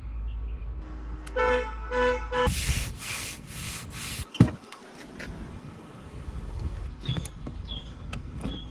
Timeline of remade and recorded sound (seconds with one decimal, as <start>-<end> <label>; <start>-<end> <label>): 0.0-4.8 remade; 4.8-5.5 recorded; 5.5-8.7 remade